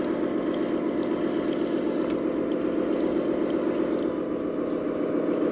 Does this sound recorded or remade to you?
recorded